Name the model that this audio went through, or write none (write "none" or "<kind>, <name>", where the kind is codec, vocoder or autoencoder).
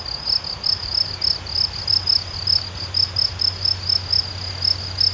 none